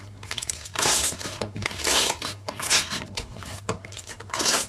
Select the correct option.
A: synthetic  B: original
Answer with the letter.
A